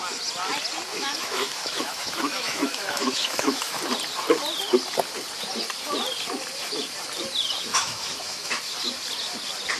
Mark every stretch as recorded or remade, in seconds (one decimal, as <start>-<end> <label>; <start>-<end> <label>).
0.0-0.9 recorded; 0.9-3.8 remade; 3.8-7.7 recorded; 7.7-8.6 remade; 8.6-9.8 recorded